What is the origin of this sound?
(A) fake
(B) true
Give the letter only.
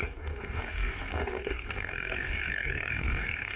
A